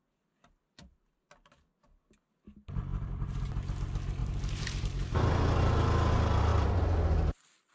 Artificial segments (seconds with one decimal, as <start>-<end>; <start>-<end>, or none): 2.9-3.4; 4.2-5.3